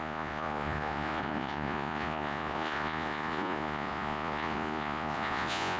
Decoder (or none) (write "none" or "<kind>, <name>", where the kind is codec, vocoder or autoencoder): vocoder, Vocos